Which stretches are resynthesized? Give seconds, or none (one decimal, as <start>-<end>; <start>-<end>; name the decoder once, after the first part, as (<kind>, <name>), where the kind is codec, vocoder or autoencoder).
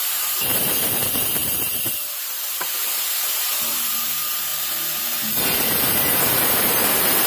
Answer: 0.0-7.3 (vocoder, BigVGAN v2)